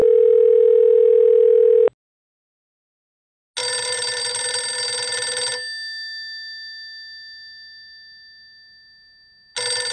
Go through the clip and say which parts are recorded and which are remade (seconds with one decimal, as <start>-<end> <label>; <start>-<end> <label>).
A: 0.0-9.9 recorded